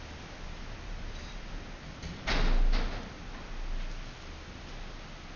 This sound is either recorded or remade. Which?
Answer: recorded